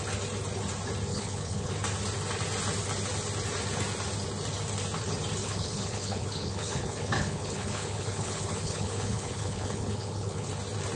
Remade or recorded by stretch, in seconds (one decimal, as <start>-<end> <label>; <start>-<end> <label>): 0.0-1.1 recorded; 1.1-1.7 remade; 1.7-5.4 recorded; 5.4-10.5 remade; 10.5-11.0 recorded